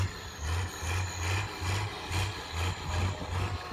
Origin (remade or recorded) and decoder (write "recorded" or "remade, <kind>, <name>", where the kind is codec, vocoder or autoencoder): recorded